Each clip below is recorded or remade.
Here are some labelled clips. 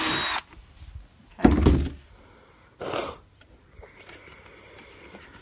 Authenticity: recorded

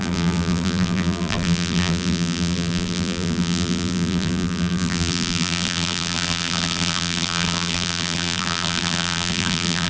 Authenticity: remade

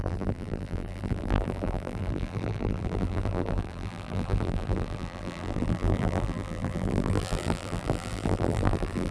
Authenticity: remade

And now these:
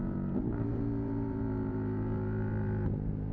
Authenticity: remade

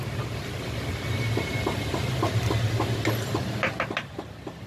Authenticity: recorded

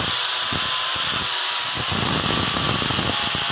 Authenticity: remade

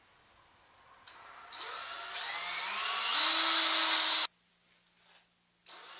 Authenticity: recorded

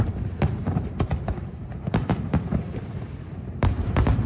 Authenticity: remade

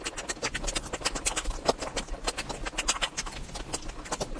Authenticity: recorded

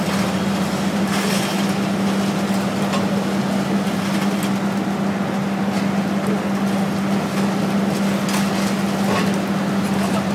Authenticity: recorded